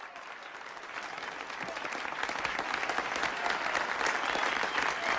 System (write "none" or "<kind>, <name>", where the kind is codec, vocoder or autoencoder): none